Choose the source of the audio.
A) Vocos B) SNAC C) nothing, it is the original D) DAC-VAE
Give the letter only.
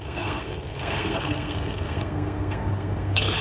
B